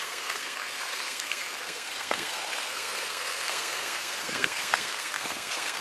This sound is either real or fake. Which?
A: fake